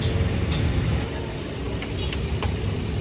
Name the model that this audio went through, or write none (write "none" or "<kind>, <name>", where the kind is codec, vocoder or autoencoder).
none